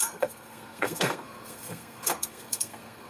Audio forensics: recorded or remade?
remade